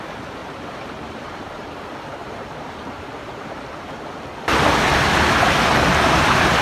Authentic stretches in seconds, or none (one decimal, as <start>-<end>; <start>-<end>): 0.0-0.4; 1.5-2.2; 4.2-6.6